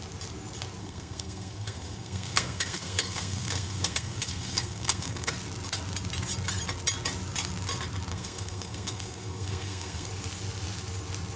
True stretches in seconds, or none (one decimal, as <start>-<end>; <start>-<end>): 0.0-0.8; 5.3-8.1; 10.1-11.4